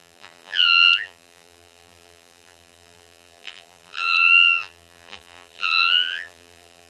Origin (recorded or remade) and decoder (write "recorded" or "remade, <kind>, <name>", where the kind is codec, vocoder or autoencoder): remade, vocoder, BigVGAN v2